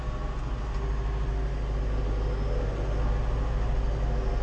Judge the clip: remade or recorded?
recorded